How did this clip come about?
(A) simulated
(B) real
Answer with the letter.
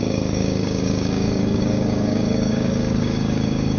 A